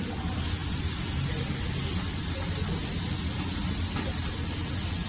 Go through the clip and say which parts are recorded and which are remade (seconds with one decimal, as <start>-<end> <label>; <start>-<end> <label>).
0.0-5.1 recorded